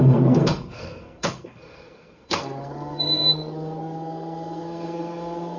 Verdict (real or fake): fake